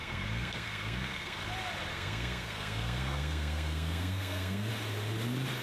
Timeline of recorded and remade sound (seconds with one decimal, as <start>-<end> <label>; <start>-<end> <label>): 0.0-1.4 remade; 1.4-1.9 recorded; 1.9-4.7 remade; 4.7-5.6 recorded

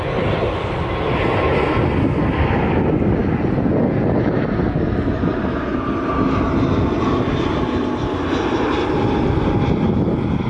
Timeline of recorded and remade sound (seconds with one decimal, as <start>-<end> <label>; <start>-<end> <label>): 0.0-10.5 recorded

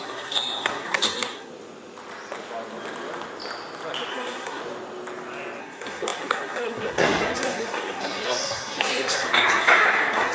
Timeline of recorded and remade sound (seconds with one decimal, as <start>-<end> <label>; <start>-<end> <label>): 0.0-1.5 remade; 1.5-4.1 recorded; 4.1-4.6 remade; 4.6-5.6 recorded; 5.6-10.3 remade

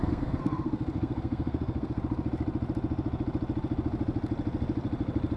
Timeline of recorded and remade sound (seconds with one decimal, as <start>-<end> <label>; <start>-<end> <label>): 0.0-2.0 remade; 2.0-5.4 recorded

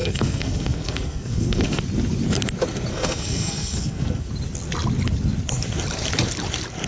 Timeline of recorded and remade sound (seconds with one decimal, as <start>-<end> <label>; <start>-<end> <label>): 0.0-1.8 remade; 1.8-2.9 recorded; 2.9-4.3 remade; 4.3-6.9 recorded

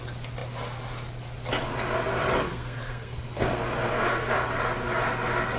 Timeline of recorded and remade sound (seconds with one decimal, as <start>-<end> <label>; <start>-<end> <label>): 0.0-2.4 recorded; 2.4-4.3 remade; 4.3-5.6 recorded

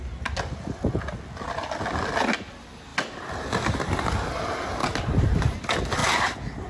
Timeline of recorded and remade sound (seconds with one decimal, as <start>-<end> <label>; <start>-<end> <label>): 0.0-6.7 recorded